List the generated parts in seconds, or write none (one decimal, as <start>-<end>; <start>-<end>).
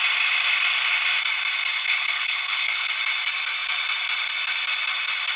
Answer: 1.8-2.9